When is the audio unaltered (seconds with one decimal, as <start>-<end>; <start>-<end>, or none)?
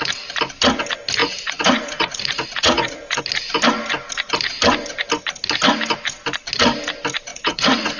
0.0-1.2; 3.2-7.3